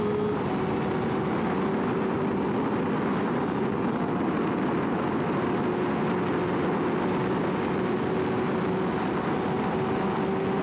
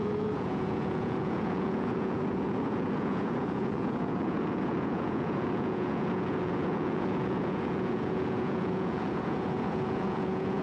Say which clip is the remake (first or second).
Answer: second